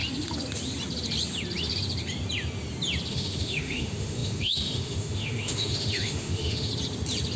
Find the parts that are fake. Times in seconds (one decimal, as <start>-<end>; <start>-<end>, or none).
3.1-6.7